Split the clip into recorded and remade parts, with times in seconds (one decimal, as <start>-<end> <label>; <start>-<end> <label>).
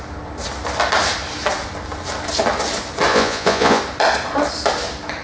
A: 0.0-3.1 recorded; 3.1-3.8 remade; 3.8-5.2 recorded